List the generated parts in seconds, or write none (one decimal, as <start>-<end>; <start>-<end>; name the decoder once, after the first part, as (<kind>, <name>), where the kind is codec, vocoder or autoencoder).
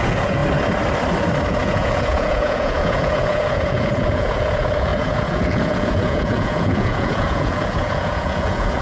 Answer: 0.0-0.4 (vocoder, Vocos); 1.5-8.8